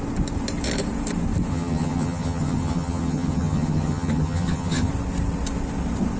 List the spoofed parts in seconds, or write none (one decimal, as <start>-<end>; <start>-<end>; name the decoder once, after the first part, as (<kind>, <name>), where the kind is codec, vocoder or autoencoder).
1.5-4.9 (vocoder, HiFi-GAN)